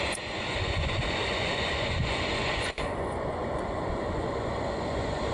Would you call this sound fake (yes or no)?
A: yes